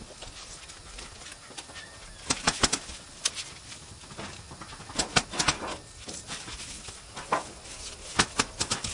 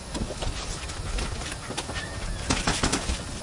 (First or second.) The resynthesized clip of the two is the second